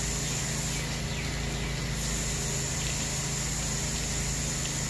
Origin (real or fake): real